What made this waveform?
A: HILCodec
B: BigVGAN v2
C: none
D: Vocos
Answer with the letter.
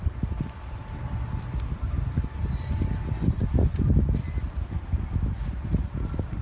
C